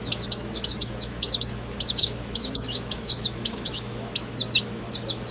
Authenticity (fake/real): fake